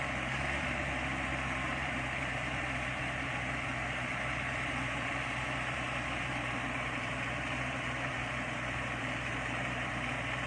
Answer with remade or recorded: remade